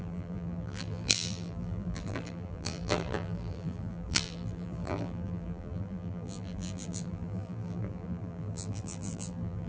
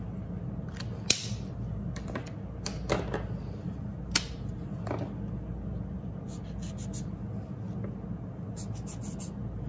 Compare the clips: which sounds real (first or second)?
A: second